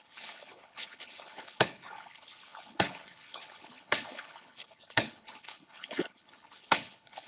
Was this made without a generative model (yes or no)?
no